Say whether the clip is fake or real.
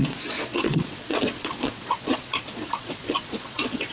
fake